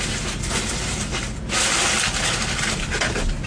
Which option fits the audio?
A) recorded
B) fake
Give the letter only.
A